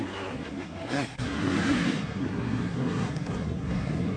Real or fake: fake